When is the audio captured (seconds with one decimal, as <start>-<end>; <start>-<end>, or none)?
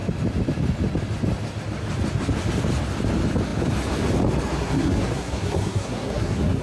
0.0-4.6